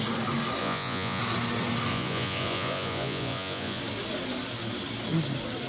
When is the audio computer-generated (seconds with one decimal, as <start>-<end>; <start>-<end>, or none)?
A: 0.6-1.2; 1.9-3.8